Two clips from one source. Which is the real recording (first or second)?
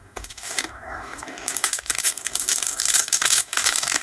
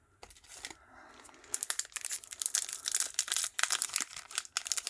second